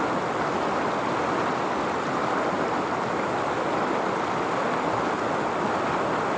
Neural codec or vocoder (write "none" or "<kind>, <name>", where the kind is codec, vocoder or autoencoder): none